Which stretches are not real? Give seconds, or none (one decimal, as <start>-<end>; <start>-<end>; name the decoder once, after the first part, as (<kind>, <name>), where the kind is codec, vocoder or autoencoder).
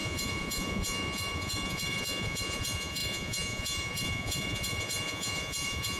0.0-6.0 (vocoder, Vocos)